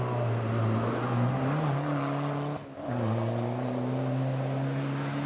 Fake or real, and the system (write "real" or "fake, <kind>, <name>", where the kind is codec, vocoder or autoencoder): real